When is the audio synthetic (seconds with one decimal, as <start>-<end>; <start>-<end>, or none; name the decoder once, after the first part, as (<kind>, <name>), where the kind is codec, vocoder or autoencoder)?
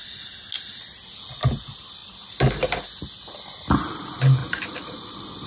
4.4-5.0 (vocoder, BigVGAN v2)